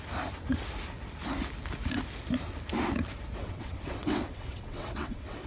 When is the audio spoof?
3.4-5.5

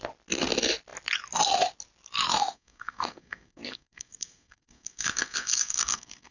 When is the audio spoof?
2.4-6.3

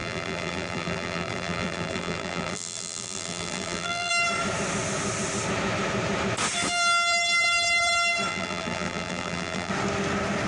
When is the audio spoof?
0.0-4.1; 8.3-9.7

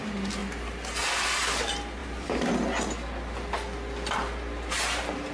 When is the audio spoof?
2.0-2.5